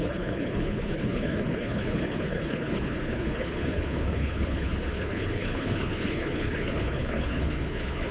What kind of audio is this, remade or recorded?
remade